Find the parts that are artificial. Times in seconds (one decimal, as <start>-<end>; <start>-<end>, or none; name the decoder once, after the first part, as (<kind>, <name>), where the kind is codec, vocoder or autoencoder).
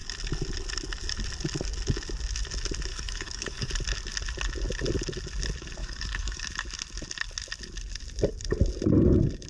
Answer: 2.9-3.7 (codec, DAC); 5.8-6.5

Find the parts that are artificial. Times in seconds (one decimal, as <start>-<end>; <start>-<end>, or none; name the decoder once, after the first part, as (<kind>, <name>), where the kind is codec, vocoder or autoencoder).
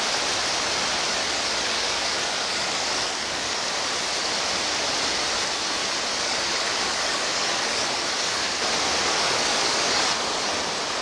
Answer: 1.2-3.7 (codec, DAC); 6.1-8.6; 9.0-10.5